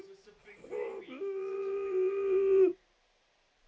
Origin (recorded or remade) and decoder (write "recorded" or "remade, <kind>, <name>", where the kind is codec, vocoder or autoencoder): remade, vocoder, BigVGAN v2